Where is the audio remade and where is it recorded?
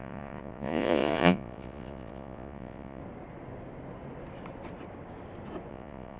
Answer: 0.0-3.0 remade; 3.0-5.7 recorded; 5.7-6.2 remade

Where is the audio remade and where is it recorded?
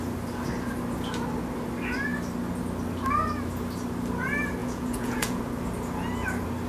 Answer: 0.0-4.6 recorded; 4.6-5.4 remade; 5.4-6.7 recorded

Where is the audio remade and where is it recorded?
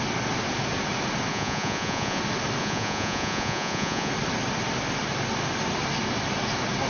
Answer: 0.0-1.3 recorded; 1.3-2.2 remade; 2.2-2.6 recorded; 2.6-4.1 remade; 4.1-6.9 recorded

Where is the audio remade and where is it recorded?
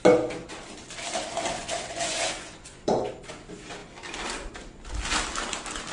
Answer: 0.0-1.6 recorded; 1.6-3.1 remade; 3.1-5.9 recorded